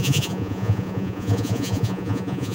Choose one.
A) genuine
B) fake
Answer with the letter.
B